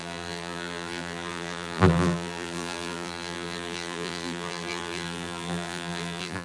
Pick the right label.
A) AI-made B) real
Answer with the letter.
A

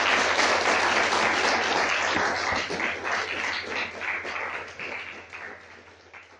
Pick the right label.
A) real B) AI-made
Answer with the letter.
A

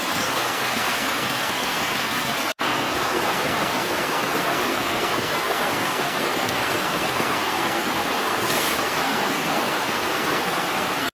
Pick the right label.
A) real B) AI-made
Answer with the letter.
B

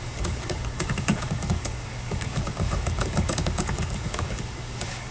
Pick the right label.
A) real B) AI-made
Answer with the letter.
B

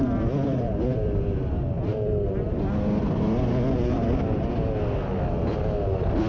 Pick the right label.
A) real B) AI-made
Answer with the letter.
A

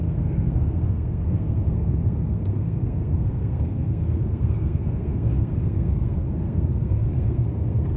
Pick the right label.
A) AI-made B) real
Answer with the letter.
A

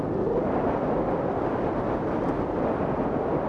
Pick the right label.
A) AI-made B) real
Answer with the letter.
B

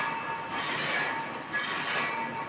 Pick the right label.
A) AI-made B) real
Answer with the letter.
B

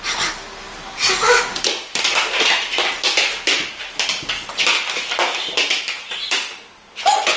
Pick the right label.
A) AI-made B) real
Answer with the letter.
B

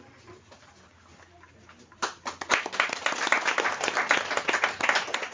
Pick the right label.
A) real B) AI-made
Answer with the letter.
A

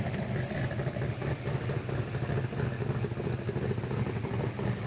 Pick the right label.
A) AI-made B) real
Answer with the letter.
B